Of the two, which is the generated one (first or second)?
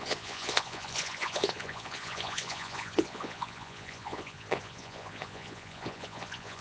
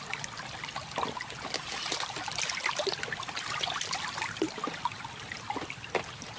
first